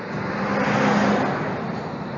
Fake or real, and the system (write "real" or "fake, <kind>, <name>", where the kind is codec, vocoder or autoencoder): real